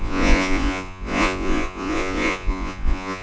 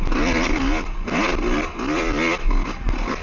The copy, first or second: first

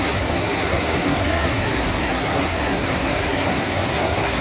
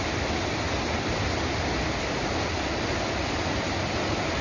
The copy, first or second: first